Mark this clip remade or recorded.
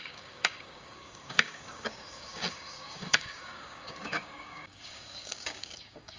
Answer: remade